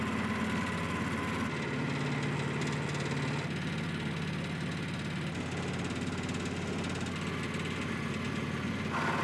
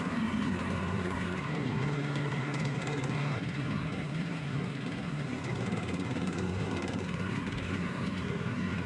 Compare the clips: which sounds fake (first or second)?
second